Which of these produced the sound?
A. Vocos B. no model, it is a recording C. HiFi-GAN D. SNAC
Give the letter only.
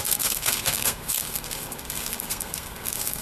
D